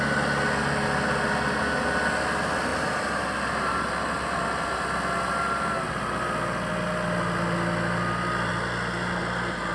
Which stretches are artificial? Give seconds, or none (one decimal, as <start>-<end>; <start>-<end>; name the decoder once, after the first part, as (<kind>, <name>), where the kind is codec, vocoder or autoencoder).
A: 2.7-3.2 (vocoder, BigVGAN v2)